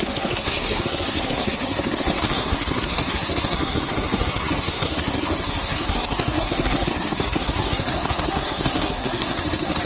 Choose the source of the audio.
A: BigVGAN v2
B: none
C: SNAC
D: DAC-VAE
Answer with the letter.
C